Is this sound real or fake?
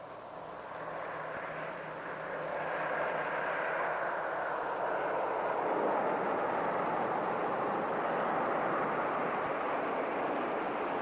real